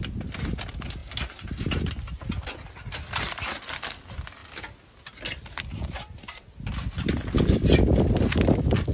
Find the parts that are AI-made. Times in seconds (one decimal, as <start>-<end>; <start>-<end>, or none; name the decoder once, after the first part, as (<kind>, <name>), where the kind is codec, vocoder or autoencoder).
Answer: none